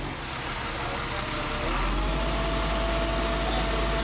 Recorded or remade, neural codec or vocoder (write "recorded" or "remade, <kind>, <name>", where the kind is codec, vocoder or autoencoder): recorded